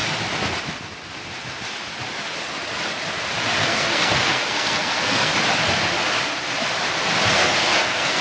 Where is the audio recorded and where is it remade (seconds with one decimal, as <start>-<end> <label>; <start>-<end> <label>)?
0.0-3.6 recorded; 3.6-5.3 remade; 5.3-7.3 recorded; 7.3-8.2 remade